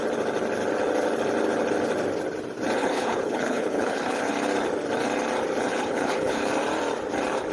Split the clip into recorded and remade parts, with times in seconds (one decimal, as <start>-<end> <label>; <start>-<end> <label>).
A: 0.0-2.8 recorded; 2.8-4.3 remade; 4.3-5.7 recorded; 5.7-6.5 remade; 6.5-7.5 recorded